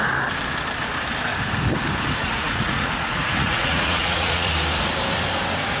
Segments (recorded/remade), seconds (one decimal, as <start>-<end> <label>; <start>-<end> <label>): 0.0-2.2 recorded; 2.2-4.5 remade; 4.5-5.8 recorded